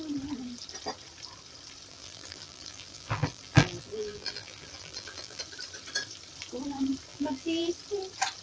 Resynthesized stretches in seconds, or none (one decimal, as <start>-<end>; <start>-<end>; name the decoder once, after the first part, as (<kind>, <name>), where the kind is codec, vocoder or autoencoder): 1.9-5.4 (vocoder, BigVGAN v2); 7.1-7.7